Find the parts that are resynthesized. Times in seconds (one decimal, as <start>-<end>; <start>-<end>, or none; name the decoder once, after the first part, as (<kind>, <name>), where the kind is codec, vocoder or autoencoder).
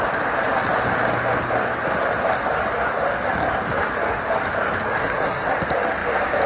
5.0-5.5 (codec, SNAC)